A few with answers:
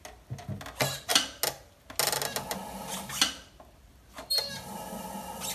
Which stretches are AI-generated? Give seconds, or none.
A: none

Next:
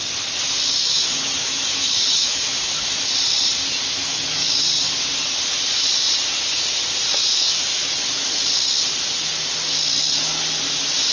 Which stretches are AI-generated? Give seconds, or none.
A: 0.9-3.1 (autoencoder, DAC-VAE); 4.0-4.7; 7.3-8.3

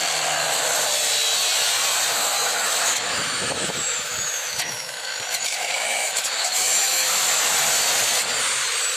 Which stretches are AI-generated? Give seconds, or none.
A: 2.2-7.1 (autoencoder, DAC-VAE)

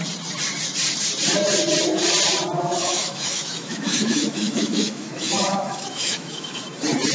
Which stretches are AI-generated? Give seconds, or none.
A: 2.8-6.6 (autoencoder, DAC-VAE)

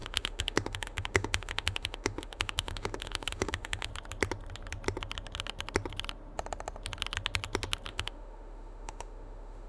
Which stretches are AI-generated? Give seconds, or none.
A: 0.0-3.9 (autoencoder, DAC-VAE); 7.9-9.7

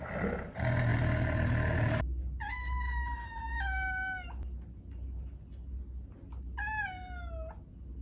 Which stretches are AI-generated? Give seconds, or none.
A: none

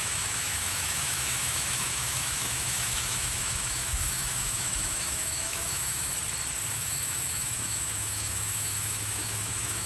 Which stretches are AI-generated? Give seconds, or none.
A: 0.0-6.1 (autoencoder, DAC-VAE); 6.7-9.9

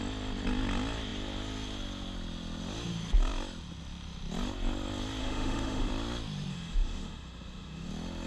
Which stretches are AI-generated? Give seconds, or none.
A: 5.2-5.9 (autoencoder, DAC-VAE); 6.5-7.9